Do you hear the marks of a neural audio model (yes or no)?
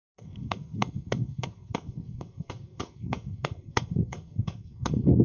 yes